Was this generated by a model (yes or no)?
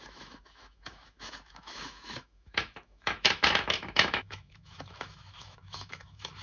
yes